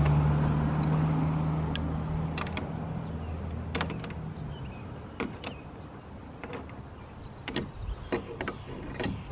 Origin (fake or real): real